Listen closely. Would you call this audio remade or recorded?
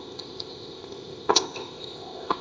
remade